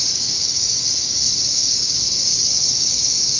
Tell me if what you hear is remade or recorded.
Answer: remade